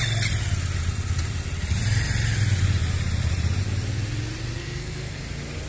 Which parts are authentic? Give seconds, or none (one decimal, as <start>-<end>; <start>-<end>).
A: 0.0-4.6; 5.2-5.7